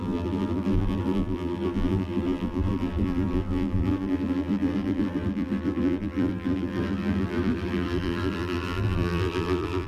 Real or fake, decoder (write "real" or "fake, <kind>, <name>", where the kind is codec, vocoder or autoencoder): fake, vocoder, BigVGAN v2